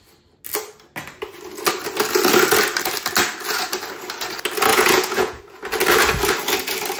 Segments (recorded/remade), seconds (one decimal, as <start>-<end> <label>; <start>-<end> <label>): 0.0-4.7 recorded; 4.7-5.4 remade; 5.4-7.0 recorded